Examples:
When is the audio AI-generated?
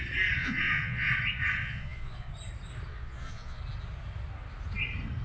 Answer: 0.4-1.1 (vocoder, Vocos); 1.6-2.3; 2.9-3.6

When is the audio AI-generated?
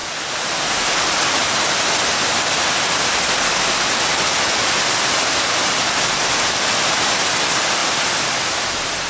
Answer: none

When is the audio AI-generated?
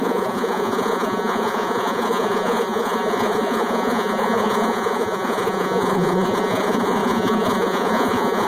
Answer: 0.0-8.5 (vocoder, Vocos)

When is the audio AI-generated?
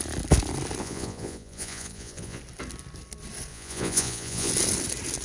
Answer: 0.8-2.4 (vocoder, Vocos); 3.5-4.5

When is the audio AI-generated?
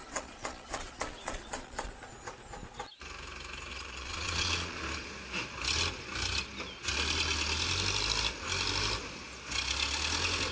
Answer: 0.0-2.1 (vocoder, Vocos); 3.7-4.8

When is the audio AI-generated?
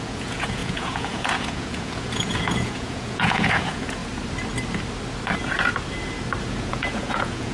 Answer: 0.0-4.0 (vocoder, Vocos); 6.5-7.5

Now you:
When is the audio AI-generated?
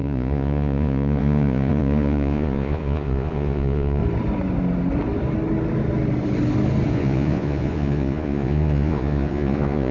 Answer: 0.0-4.0 (vocoder, Vocos); 6.9-9.9